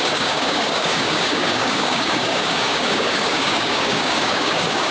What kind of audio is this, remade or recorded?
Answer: remade